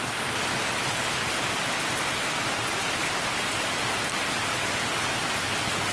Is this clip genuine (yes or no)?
yes